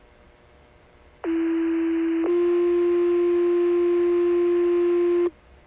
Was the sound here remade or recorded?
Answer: recorded